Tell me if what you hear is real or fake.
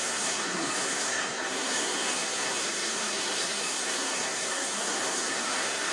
fake